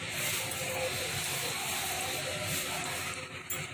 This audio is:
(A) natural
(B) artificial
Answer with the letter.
A